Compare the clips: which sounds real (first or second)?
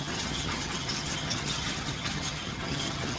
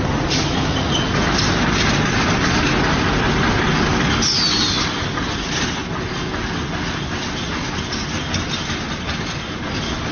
second